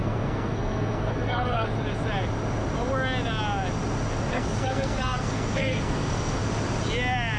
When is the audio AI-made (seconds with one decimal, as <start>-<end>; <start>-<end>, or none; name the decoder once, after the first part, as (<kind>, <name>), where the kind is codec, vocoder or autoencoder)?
0.0-1.7 (codec, SNAC); 4.3-6.4